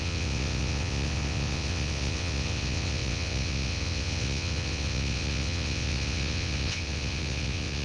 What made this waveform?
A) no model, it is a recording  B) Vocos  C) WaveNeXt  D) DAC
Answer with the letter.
C